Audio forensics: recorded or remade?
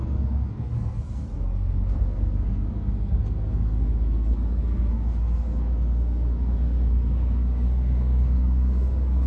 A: remade